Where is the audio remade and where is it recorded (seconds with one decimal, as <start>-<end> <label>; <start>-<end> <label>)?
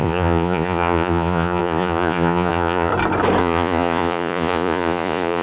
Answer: 0.0-2.9 remade; 2.9-3.4 recorded; 3.4-5.4 remade